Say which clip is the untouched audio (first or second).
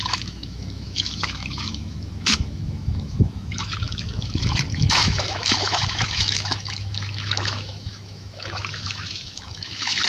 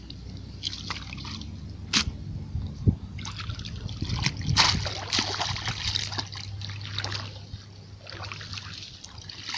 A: second